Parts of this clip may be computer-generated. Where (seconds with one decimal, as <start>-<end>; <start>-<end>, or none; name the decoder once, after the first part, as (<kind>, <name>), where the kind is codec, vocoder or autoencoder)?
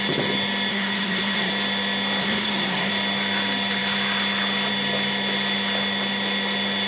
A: 0.7-1.5 (codec, SNAC); 2.2-2.9